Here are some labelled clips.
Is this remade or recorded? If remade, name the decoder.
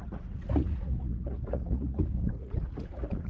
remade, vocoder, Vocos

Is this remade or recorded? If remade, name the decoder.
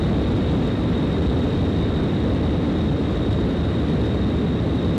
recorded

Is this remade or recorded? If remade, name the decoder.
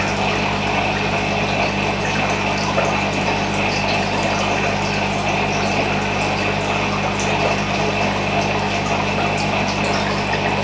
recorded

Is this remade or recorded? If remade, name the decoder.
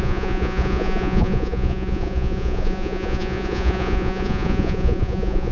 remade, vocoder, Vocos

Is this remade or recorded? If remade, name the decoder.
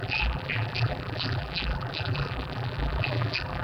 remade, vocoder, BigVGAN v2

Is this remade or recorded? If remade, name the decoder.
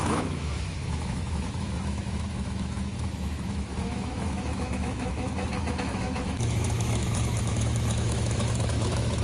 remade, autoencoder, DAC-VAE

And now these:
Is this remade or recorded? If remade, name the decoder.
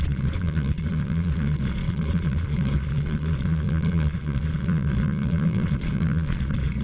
remade, vocoder, Vocos